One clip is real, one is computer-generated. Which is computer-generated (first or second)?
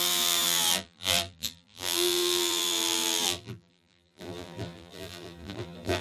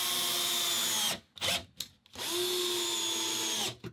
first